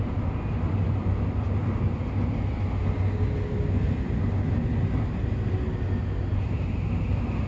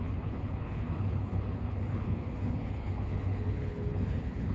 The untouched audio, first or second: first